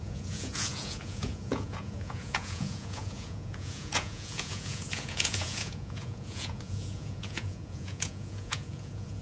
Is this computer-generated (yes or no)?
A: yes